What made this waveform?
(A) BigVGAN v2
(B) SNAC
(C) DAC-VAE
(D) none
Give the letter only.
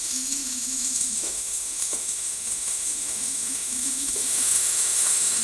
C